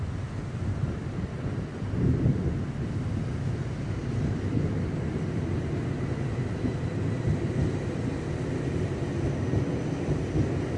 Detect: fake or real real